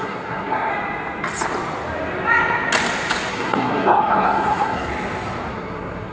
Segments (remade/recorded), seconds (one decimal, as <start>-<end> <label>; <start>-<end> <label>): 0.0-0.7 remade; 0.7-3.3 recorded; 3.3-4.9 remade; 4.9-5.5 recorded; 5.5-6.1 remade